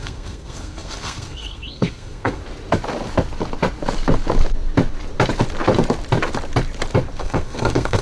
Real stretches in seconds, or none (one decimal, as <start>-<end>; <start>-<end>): 2.4-7.2